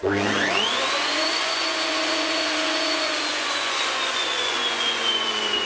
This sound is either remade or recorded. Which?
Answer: remade